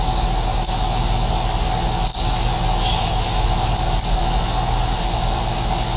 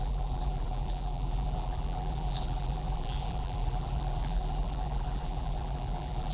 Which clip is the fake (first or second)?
second